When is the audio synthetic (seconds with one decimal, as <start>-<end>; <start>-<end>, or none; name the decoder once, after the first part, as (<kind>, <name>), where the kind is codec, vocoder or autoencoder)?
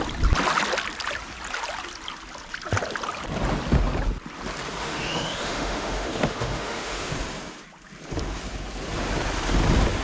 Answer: 4.8-7.1 (autoencoder, DAC-VAE)